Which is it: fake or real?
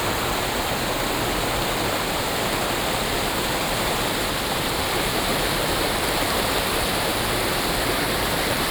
real